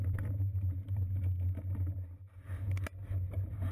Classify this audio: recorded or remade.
recorded